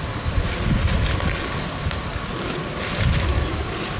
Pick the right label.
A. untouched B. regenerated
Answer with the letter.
A